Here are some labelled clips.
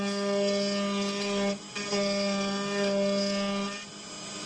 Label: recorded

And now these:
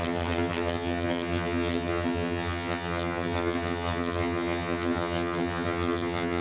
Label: remade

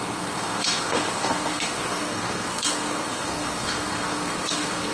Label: remade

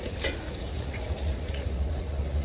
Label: remade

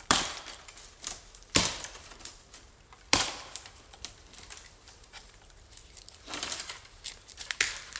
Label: remade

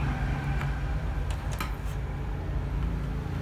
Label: recorded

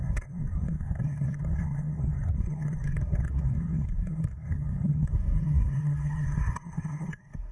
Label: remade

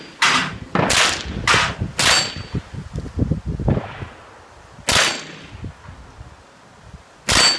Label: recorded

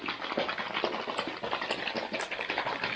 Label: recorded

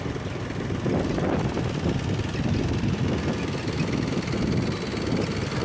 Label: recorded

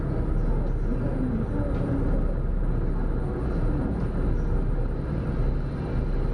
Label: recorded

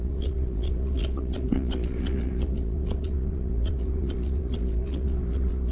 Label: remade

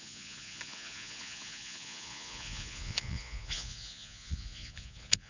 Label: remade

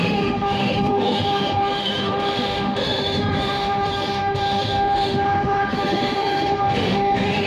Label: remade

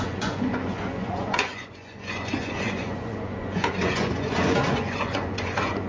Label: remade